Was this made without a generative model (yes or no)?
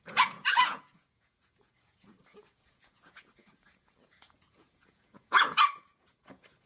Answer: no